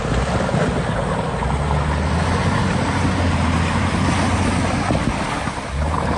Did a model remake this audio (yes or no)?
no